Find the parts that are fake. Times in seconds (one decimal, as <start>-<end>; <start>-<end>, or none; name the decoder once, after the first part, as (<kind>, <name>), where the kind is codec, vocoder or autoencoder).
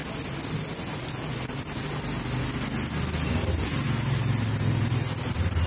none